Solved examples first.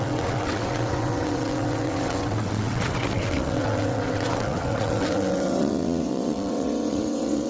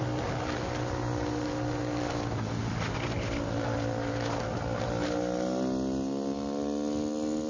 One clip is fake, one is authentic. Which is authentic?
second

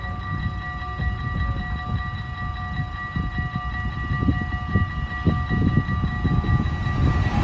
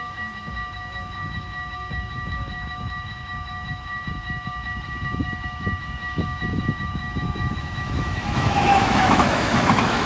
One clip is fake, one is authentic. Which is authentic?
first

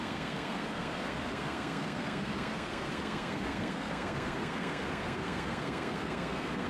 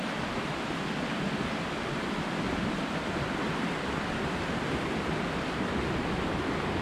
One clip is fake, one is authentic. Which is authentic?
second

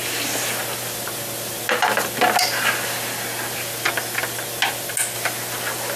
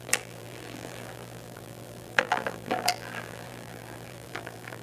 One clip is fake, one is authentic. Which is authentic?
first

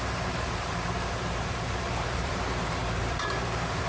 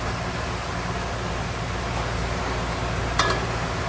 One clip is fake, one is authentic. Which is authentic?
second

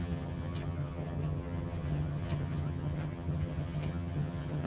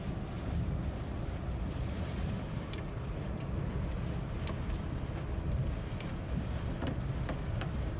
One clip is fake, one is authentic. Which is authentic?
second